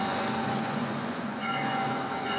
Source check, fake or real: fake